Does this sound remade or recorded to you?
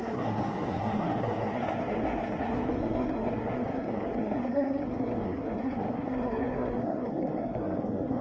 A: remade